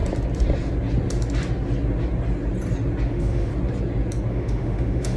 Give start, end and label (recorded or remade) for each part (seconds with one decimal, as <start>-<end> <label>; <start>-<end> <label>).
0.0-3.1 recorded; 3.1-3.5 remade; 3.5-4.3 recorded; 4.3-5.2 remade